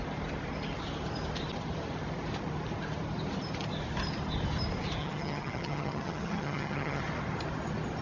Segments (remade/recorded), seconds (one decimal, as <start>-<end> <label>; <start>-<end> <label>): 0.0-5.0 recorded; 5.0-7.0 remade; 7.0-8.0 recorded